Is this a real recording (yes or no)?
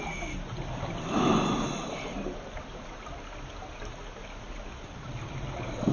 yes